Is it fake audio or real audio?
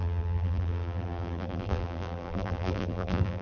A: fake